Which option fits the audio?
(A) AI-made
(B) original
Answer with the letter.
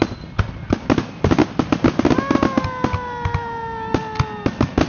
B